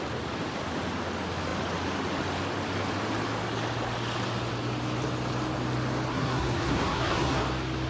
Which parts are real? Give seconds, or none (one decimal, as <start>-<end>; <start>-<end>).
0.0-6.1; 7.4-7.9